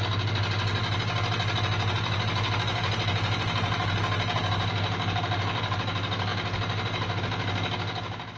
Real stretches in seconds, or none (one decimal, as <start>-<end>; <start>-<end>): 0.0-8.4